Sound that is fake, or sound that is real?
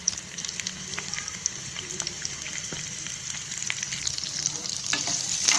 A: real